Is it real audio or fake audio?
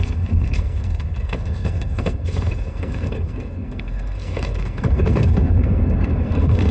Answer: fake